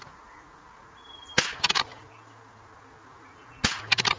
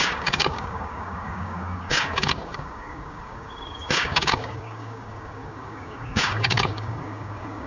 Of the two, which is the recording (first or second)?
first